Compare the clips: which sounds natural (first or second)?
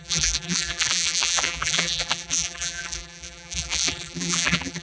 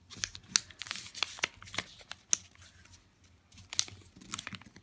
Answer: second